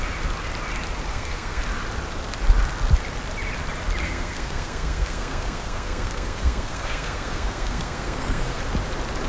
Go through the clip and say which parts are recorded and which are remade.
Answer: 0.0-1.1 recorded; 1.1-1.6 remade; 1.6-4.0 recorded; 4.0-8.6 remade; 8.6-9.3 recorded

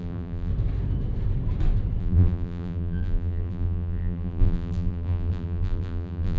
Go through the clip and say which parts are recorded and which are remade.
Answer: 0.0-0.5 remade; 0.5-2.0 recorded; 2.0-6.4 remade

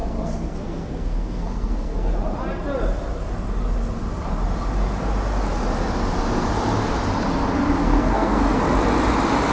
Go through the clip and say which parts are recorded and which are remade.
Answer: 0.0-2.1 remade; 2.1-7.8 recorded; 7.8-8.6 remade; 8.6-9.5 recorded

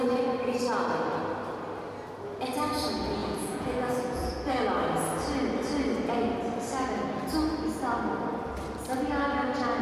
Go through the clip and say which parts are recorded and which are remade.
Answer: 0.0-3.2 recorded; 3.2-4.5 remade; 4.5-9.8 recorded

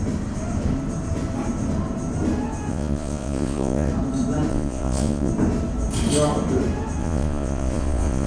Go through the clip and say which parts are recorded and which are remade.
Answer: 0.0-2.7 recorded; 2.7-3.9 remade; 3.9-4.5 recorded; 4.5-5.3 remade; 5.3-7.0 recorded; 7.0-8.3 remade

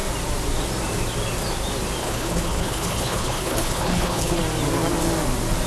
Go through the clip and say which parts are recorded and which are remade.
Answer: 0.0-2.0 recorded; 2.0-4.4 remade; 4.4-5.7 recorded